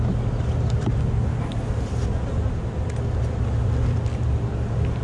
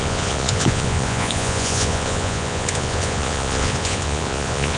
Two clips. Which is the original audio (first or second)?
first